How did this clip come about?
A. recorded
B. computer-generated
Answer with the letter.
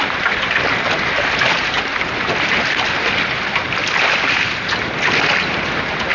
A